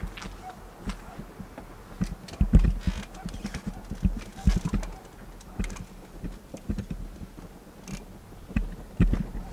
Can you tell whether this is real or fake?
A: real